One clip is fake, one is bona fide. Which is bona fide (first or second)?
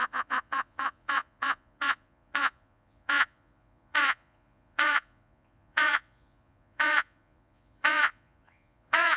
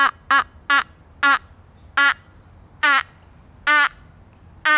second